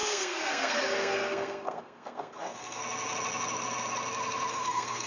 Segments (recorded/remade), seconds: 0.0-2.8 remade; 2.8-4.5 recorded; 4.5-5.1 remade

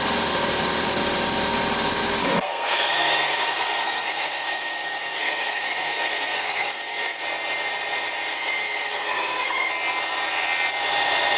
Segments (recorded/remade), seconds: 0.0-2.2 recorded; 2.2-7.2 remade; 7.2-8.3 recorded; 8.3-9.7 remade; 9.7-11.4 recorded

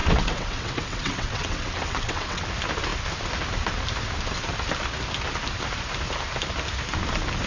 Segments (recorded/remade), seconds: 0.0-2.5 remade; 2.5-7.5 recorded